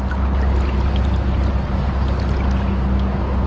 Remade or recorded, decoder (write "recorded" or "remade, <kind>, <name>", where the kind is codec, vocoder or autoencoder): recorded